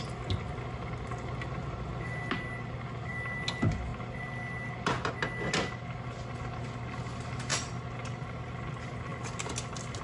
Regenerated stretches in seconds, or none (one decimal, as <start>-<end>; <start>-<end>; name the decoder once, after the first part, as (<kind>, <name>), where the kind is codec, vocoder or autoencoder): none